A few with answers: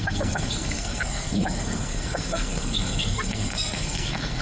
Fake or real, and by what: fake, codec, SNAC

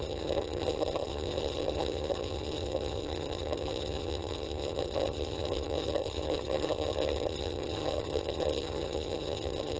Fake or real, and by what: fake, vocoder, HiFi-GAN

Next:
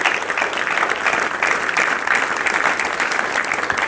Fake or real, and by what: real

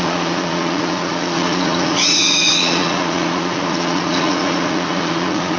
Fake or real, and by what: fake, vocoder, Vocos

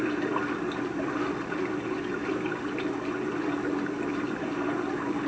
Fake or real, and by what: real